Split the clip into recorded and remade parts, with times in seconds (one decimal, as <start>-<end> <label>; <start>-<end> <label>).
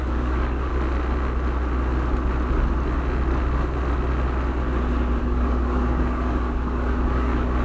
0.0-0.7 remade; 0.7-5.2 recorded; 5.2-7.6 remade